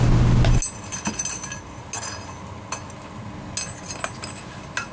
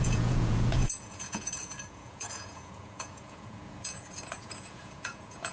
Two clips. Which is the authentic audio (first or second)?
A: first